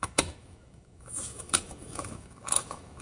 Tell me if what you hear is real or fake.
fake